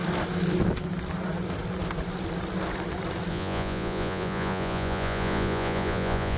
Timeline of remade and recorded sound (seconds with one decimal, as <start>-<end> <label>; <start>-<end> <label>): 0.0-3.3 recorded; 3.3-6.4 remade